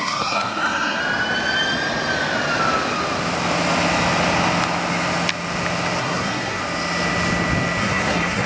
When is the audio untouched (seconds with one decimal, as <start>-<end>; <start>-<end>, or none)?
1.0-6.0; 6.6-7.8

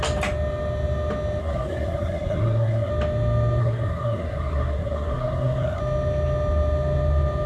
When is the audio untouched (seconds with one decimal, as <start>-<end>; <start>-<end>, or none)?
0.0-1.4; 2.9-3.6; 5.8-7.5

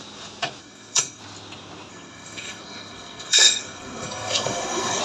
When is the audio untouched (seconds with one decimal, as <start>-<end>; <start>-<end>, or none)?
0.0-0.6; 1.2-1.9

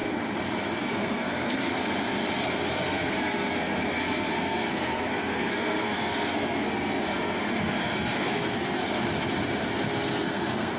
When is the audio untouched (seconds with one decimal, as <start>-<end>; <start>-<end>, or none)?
0.0-0.8; 1.7-2.4; 8.8-9.9